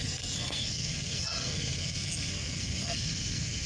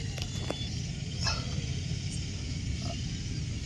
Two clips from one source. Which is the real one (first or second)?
second